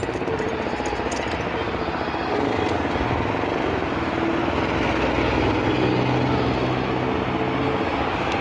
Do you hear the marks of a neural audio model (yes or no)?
no